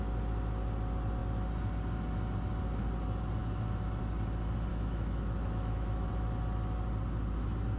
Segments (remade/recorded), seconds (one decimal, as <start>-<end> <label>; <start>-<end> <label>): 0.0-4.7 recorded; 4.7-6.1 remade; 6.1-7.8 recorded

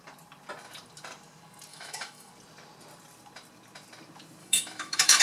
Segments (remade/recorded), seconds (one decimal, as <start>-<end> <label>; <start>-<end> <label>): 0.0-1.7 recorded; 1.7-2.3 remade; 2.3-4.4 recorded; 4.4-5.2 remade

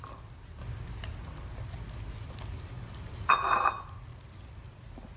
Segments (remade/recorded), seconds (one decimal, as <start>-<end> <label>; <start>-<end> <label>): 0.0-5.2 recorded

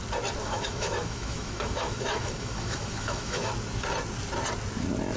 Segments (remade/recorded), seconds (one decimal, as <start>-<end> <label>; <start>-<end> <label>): 0.0-0.4 recorded; 0.4-3.5 remade; 3.5-5.2 recorded

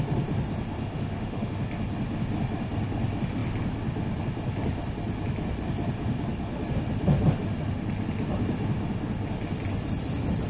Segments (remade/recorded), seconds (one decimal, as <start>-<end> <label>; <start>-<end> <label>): 0.0-0.8 recorded; 0.8-1.5 remade; 1.5-10.5 recorded

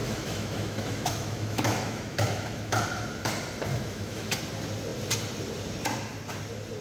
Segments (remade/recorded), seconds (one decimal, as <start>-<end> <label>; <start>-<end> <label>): 0.0-2.8 remade; 2.8-3.7 recorded; 3.7-4.4 remade; 4.4-6.8 recorded

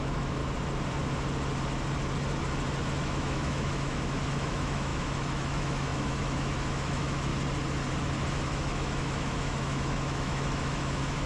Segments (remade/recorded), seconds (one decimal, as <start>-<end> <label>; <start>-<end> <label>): 0.0-0.4 remade; 0.4-3.0 recorded; 3.0-7.3 remade; 7.3-8.3 recorded; 8.3-11.3 remade

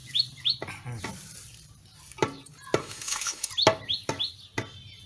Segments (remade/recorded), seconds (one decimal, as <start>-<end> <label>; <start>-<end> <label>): 0.0-2.8 recorded; 2.8-3.5 remade; 3.5-5.1 recorded